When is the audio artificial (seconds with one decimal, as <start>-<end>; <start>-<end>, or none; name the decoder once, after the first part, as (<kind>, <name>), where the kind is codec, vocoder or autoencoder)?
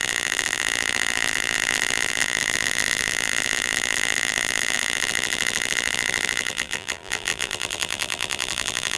0.0-9.0 (vocoder, BigVGAN v2)